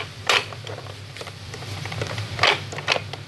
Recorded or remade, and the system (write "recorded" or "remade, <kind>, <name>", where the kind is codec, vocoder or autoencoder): remade, vocoder, BigVGAN v2